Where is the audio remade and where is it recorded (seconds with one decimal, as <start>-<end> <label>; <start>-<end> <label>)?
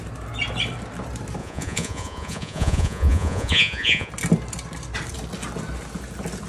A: 0.0-1.4 recorded; 1.4-4.1 remade; 4.1-6.5 recorded